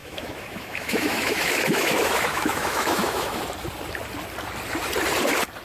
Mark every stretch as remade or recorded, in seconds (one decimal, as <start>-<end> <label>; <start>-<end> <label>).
0.0-3.4 remade; 3.4-5.6 recorded